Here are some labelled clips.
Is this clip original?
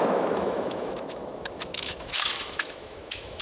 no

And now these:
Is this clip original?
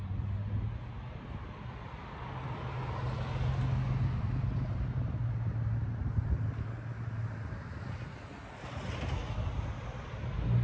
yes